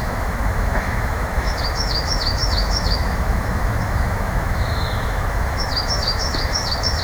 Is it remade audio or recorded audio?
remade